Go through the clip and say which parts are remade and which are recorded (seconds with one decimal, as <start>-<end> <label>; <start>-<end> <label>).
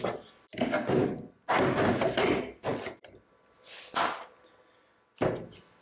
0.0-5.8 recorded